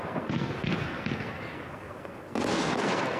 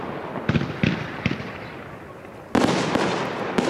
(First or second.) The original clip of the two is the second